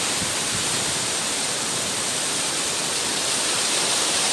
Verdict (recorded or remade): remade